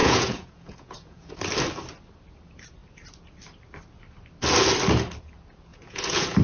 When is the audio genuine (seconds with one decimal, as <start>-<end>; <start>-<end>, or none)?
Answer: 1.3-5.7